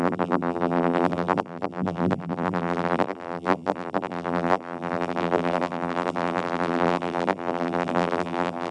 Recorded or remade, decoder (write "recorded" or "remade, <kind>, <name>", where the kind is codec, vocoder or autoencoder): remade, vocoder, BigVGAN v2